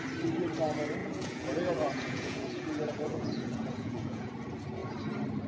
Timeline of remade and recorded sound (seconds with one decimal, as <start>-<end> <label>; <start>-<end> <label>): 0.0-1.0 recorded; 1.0-4.3 remade; 4.3-5.5 recorded